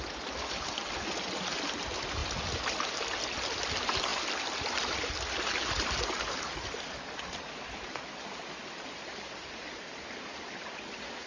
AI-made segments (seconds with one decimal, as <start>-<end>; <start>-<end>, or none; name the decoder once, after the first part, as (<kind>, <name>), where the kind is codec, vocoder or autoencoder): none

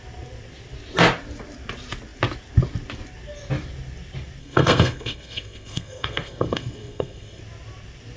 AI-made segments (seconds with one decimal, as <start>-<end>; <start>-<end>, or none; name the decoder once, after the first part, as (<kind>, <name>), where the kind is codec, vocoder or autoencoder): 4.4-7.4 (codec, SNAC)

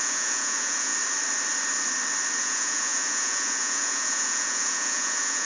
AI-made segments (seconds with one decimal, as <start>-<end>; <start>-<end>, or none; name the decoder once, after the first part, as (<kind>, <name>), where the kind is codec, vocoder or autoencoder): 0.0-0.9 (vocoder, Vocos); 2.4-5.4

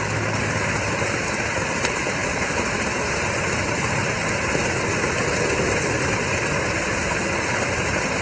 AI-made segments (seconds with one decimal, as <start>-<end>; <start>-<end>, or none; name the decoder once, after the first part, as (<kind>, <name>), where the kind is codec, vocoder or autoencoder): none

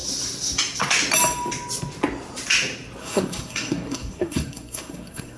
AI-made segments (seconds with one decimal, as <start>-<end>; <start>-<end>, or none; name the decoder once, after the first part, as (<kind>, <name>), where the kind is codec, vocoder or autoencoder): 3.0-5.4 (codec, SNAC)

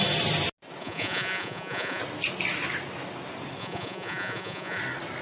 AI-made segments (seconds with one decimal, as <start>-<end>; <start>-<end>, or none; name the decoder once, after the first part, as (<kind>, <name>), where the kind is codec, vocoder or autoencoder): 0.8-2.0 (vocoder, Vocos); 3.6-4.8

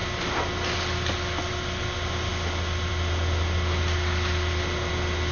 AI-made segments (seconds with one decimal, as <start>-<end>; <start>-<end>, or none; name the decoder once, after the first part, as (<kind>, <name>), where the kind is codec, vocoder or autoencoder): none

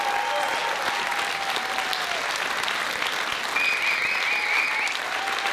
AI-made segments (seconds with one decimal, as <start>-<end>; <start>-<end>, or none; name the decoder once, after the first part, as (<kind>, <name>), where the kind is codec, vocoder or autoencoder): none